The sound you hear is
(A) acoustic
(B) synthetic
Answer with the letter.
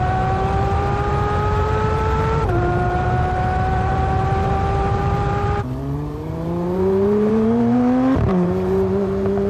B